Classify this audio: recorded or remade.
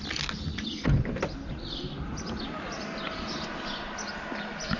recorded